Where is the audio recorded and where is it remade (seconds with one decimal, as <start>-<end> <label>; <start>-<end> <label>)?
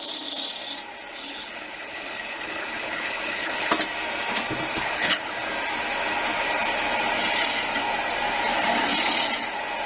0.0-1.2 recorded; 1.2-3.7 remade; 3.7-4.7 recorded; 4.7-5.3 remade; 5.3-9.9 recorded